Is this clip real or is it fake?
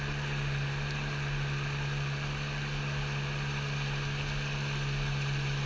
real